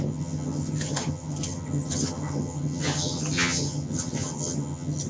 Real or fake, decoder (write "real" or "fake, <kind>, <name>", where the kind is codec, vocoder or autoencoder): fake, vocoder, HiFi-GAN